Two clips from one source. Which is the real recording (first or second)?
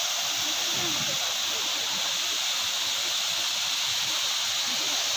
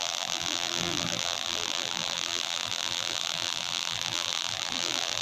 first